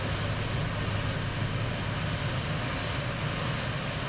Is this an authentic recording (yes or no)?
yes